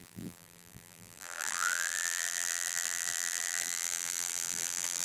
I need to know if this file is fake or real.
fake